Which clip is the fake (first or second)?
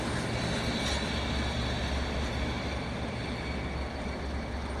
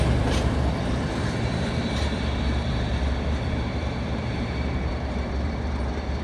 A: second